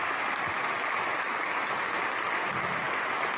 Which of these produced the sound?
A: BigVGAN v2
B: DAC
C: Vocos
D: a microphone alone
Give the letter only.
D